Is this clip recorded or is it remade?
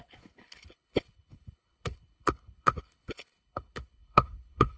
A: remade